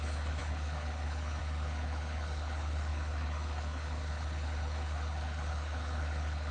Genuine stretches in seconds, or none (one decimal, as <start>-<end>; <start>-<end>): none